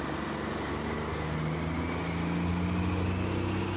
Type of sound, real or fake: real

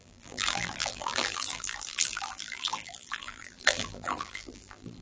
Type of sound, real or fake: fake